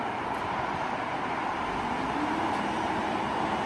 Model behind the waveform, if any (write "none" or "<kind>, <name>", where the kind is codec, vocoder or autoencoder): none